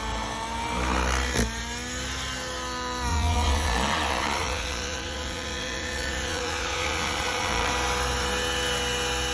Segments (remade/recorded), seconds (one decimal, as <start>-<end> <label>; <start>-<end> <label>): 0.0-3.1 recorded; 3.1-7.7 remade; 7.7-9.3 recorded